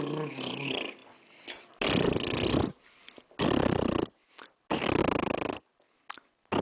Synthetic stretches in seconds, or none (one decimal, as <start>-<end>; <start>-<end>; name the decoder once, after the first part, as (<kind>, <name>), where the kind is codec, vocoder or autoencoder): none